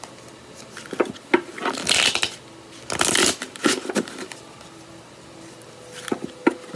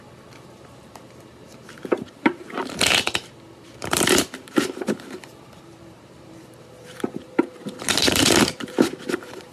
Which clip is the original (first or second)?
first